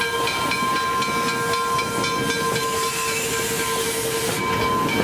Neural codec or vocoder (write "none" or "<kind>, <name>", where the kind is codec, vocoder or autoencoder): none